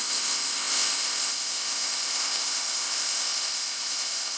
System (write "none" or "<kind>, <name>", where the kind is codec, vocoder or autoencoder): codec, ZipCodec